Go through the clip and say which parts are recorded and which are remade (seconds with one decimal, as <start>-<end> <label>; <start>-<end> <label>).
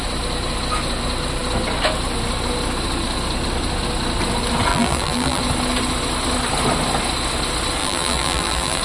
0.0-4.7 recorded; 4.7-5.4 remade; 5.4-7.8 recorded; 7.8-8.8 remade